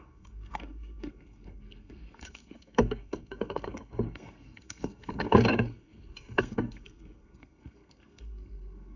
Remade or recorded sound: remade